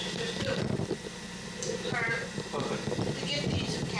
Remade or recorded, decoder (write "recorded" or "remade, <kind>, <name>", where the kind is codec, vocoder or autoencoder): recorded